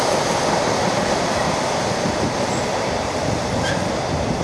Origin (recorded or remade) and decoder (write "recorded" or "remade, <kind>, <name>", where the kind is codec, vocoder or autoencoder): recorded